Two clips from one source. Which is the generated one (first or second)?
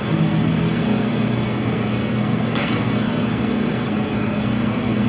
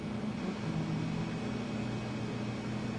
first